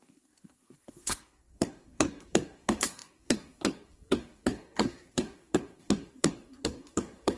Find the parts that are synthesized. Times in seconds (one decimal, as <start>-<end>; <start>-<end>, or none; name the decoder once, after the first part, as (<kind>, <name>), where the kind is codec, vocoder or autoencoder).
0.0-7.4 (codec, SNAC)